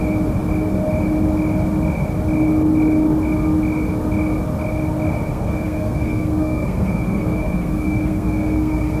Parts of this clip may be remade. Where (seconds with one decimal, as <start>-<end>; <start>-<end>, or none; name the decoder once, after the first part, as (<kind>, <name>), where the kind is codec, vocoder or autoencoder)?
5.3-9.0 (codec, SNAC)